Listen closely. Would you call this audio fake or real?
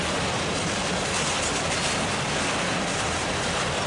real